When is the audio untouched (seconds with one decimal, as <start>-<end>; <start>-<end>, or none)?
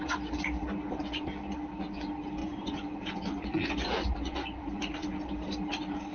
0.0-2.4; 4.7-6.1